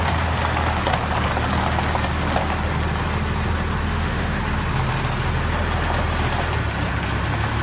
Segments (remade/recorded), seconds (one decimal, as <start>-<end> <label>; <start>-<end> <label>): 0.0-3.8 recorded; 3.8-4.4 remade; 4.4-7.6 recorded

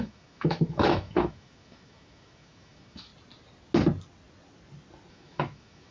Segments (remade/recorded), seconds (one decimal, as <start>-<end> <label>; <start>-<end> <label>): 0.0-3.1 remade; 3.1-5.1 recorded; 5.1-5.9 remade

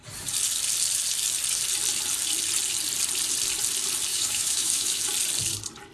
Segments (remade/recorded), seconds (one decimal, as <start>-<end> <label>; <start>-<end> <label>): 0.0-4.1 recorded; 4.1-5.0 remade; 5.0-5.9 recorded

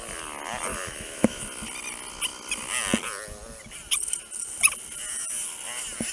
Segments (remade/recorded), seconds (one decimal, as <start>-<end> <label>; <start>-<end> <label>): 0.0-0.7 recorded; 0.7-1.4 remade; 1.4-6.1 recorded

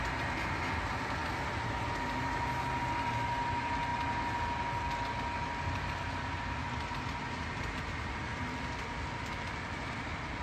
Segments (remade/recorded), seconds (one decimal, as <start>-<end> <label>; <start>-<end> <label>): 0.0-10.4 recorded

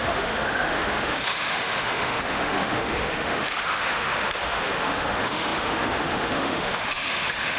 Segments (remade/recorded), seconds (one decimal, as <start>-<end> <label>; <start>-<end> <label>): 0.0-7.6 remade